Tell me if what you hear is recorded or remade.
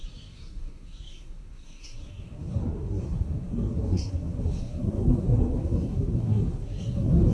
remade